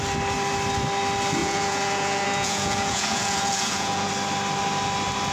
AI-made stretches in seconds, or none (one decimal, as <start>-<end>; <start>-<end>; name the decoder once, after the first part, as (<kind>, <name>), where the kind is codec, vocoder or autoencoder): 1.4-4.1 (vocoder, Vocos)